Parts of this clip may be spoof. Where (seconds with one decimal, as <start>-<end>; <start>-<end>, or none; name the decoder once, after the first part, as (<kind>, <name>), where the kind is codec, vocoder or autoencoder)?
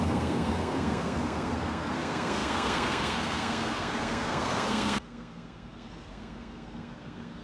0.0-7.4 (codec, SNAC)